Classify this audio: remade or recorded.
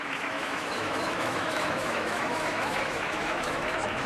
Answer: remade